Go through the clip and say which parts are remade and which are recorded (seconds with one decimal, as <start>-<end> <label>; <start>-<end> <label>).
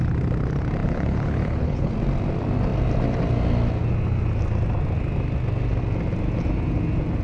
0.0-0.8 recorded; 0.8-1.9 remade; 1.9-7.2 recorded